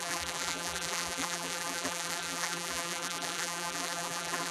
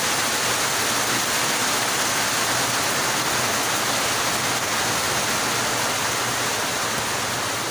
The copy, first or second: first